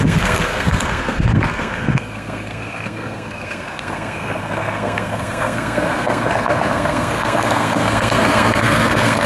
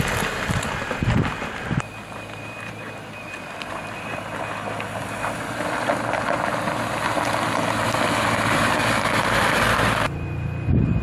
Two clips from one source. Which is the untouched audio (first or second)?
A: second